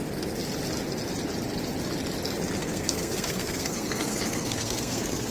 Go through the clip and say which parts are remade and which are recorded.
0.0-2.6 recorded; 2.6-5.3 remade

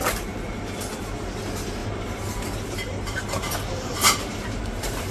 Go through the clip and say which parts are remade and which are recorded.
0.0-1.8 recorded; 1.8-5.1 remade

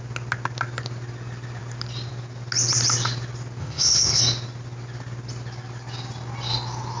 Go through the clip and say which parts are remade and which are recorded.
0.0-3.6 recorded; 3.6-4.2 remade; 4.2-7.0 recorded

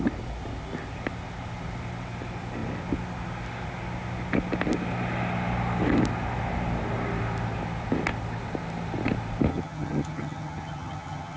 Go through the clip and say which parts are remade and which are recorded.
0.0-9.5 recorded; 9.5-11.4 remade

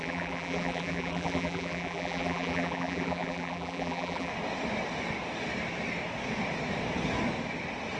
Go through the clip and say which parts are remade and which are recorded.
0.0-4.3 remade; 4.3-8.0 recorded

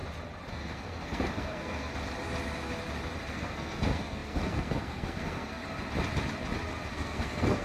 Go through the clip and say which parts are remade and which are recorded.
0.0-0.5 recorded; 0.5-1.9 remade; 1.9-3.3 recorded; 3.3-5.6 remade; 5.6-6.9 recorded; 6.9-7.6 remade